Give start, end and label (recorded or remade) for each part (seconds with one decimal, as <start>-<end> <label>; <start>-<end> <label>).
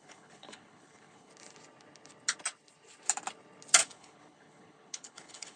0.0-1.3 remade; 1.3-3.8 recorded; 3.8-5.6 remade